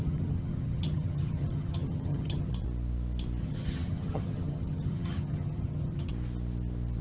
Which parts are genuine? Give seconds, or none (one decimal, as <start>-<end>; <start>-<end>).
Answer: 2.5-3.4; 6.1-7.0